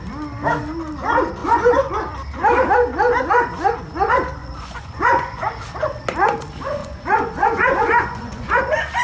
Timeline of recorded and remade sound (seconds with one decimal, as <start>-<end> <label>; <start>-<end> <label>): 0.0-1.4 recorded; 1.4-1.9 remade; 1.9-4.4 recorded; 4.4-5.4 remade; 5.4-6.8 recorded; 6.8-8.6 remade; 8.6-9.0 recorded

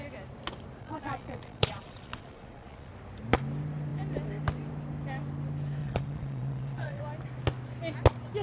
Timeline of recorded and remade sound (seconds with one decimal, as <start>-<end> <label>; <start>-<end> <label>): 0.0-0.8 recorded; 0.8-2.9 remade; 2.9-5.8 recorded; 5.8-7.0 remade; 7.0-8.4 recorded

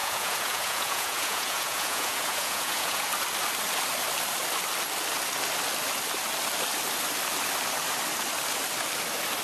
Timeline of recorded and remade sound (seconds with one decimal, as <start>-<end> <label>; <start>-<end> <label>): 0.0-3.1 remade; 3.1-9.4 recorded

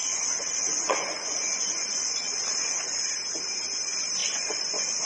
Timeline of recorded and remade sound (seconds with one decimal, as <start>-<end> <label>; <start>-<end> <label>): 0.0-3.0 remade; 3.0-4.2 recorded; 4.2-5.0 remade

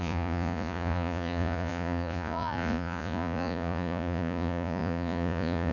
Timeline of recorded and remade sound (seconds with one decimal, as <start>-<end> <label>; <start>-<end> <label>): 0.0-5.7 remade

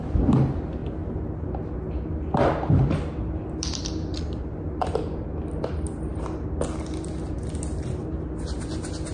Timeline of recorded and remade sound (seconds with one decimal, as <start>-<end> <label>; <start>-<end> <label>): 0.0-9.1 recorded

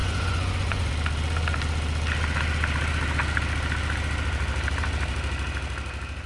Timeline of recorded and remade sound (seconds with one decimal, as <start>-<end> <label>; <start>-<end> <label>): 0.0-0.9 remade; 0.9-6.3 recorded